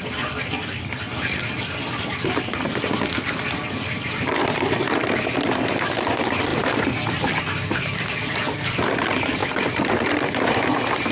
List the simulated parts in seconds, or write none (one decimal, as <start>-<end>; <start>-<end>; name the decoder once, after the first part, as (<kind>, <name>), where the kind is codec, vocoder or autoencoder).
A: 0.0-11.1 (vocoder, BigVGAN v2)